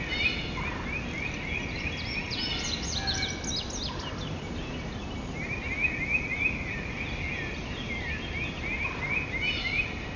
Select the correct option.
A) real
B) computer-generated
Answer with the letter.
A